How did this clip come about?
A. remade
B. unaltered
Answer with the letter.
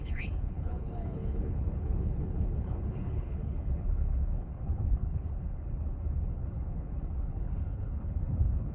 A